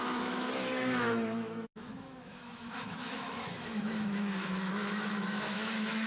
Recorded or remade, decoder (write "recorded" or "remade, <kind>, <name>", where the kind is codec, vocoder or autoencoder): remade, autoencoder, DAC-VAE